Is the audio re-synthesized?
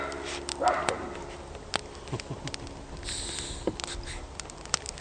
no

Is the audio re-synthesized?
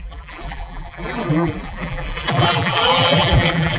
yes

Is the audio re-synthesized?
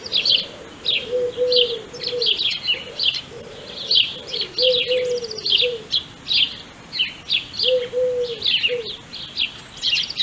no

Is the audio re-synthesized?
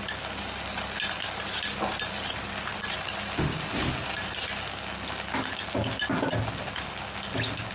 no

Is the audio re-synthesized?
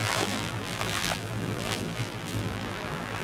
yes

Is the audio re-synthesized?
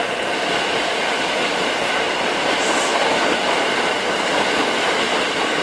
yes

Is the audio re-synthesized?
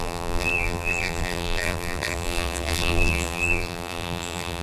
yes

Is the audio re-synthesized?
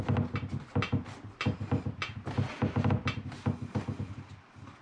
no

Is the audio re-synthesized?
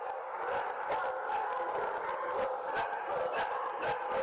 no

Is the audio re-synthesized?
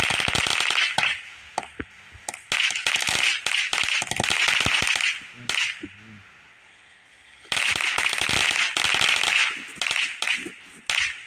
no